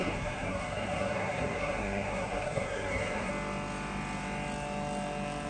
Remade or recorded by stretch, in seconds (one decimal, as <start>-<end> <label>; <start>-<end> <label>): 0.0-3.3 remade; 3.3-5.5 recorded